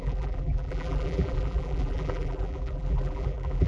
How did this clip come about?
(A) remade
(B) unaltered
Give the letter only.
A